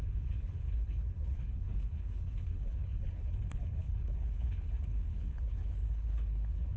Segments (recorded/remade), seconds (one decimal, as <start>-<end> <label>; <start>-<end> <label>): 0.0-6.8 remade